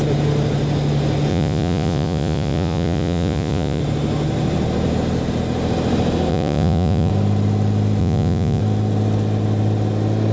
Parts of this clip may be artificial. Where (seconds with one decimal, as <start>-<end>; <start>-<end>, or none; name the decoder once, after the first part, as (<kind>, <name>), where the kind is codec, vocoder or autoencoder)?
1.3-3.8 (vocoder, Vocos); 6.3-7.1; 8.0-8.6